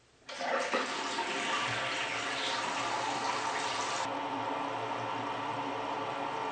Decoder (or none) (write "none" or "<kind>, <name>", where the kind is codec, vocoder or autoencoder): none